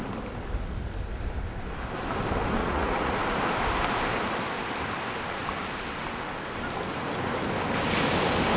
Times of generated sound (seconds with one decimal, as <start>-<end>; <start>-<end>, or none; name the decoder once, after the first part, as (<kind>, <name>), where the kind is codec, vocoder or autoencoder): 2.6-3.2 (vocoder, Vocos)